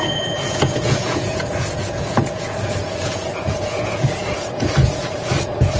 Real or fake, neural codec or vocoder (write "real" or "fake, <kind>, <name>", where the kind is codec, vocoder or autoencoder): fake, vocoder, Vocos